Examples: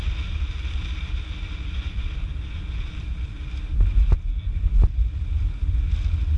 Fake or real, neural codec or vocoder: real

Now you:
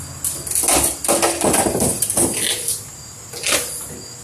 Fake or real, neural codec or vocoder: real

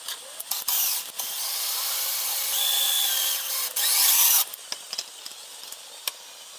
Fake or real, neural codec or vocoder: real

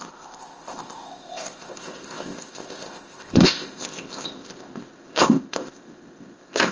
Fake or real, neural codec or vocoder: fake, codec, ZipCodec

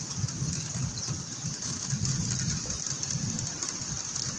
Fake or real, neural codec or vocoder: real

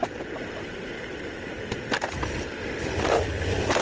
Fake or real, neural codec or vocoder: real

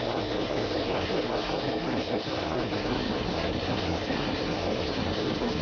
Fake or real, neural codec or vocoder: fake, codec, SNAC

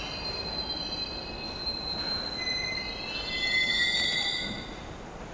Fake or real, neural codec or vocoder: real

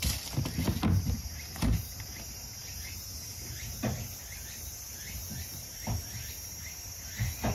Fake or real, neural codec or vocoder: real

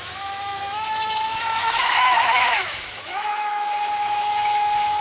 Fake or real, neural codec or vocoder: fake, autoencoder, DAC-VAE